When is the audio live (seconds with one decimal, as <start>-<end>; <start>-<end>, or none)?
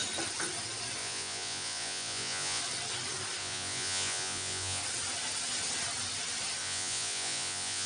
0.0-1.0; 2.6-3.4; 4.8-6.6